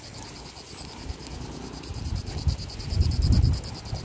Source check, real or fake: real